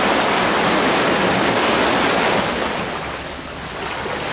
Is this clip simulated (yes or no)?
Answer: no